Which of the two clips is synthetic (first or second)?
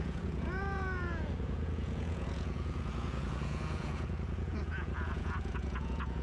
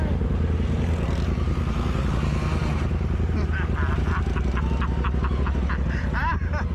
first